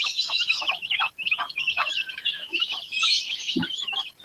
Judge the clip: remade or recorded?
remade